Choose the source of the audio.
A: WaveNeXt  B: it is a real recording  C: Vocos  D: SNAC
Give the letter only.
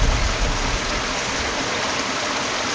B